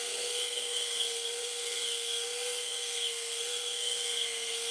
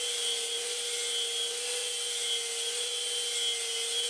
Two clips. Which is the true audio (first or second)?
second